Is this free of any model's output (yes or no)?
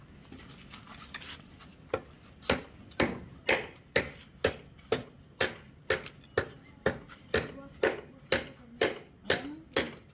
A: yes